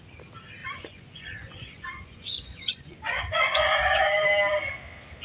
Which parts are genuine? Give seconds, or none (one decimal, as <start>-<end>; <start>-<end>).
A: 0.0-0.6; 3.7-5.2